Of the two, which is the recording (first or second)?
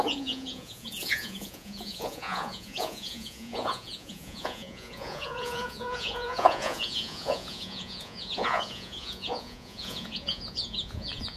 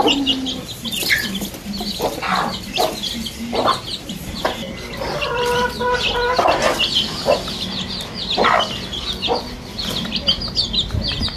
second